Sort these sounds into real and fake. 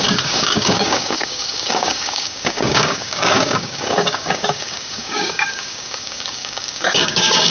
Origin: fake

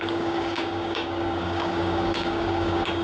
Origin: fake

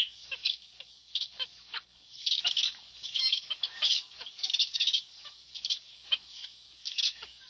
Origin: fake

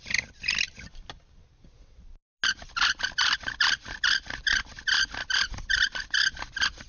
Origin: real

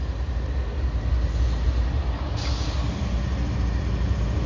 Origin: real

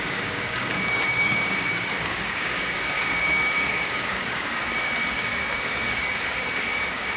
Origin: fake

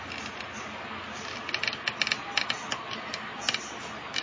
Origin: real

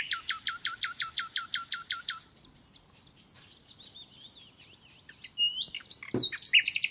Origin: real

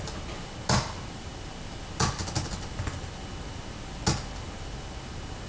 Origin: real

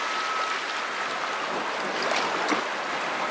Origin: real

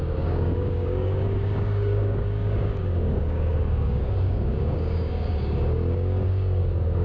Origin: fake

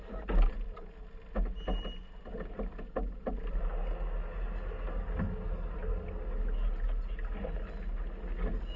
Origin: real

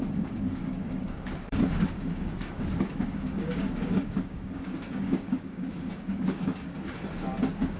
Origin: fake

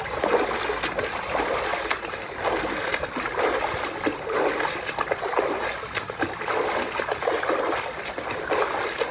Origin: real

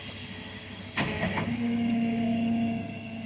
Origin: fake